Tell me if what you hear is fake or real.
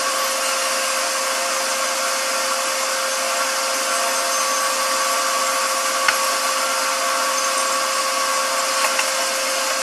real